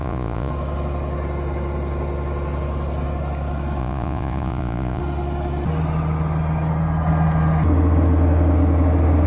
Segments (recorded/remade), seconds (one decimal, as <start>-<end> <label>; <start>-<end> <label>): 0.0-0.5 remade; 0.5-3.8 recorded; 3.8-5.0 remade; 5.0-9.3 recorded